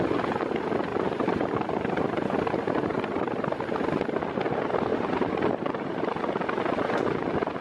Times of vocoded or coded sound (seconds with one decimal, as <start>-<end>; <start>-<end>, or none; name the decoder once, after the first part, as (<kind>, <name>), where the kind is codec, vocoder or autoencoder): 0.9-3.9 (vocoder, BigVGAN v2); 4.9-6.0